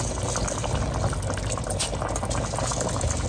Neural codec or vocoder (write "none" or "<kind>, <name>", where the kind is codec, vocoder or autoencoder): none